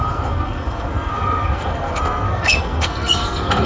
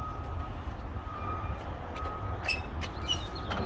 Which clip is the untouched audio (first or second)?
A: second